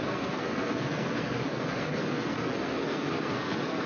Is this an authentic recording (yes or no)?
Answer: no